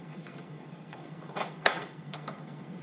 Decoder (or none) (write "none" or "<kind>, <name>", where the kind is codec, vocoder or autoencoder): codec, SNAC